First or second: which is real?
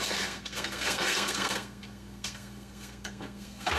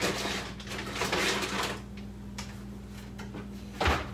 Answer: second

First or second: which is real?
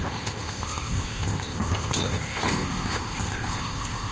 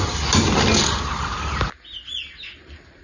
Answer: second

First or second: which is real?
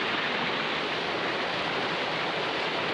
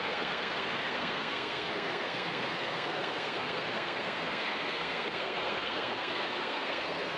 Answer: first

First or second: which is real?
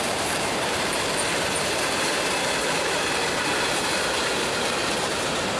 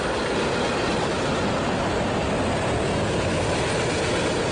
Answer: second